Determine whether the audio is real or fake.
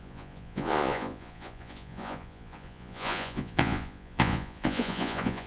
fake